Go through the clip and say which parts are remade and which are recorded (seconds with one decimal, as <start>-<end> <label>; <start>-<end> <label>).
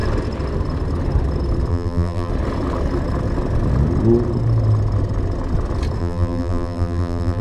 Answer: 0.0-1.7 recorded; 1.7-2.3 remade; 2.3-6.0 recorded; 6.0-7.4 remade